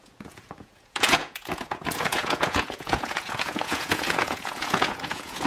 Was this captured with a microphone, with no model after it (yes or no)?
no